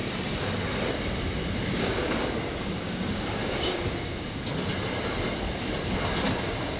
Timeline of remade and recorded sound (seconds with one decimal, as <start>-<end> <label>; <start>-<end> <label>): 0.0-1.6 recorded; 1.6-4.5 remade; 4.5-6.8 recorded